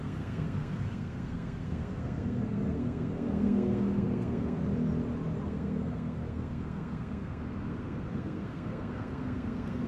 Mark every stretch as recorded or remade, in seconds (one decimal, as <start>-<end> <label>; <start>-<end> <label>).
0.0-4.6 remade; 4.6-5.4 recorded; 5.4-9.9 remade